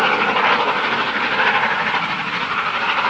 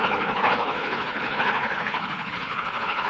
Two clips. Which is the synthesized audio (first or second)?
second